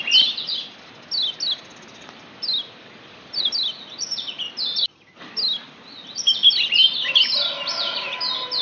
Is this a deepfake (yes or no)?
no